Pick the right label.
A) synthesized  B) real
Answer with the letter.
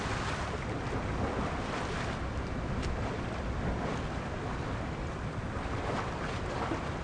A